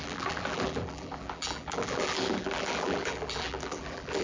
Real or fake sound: fake